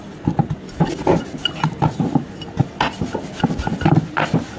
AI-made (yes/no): no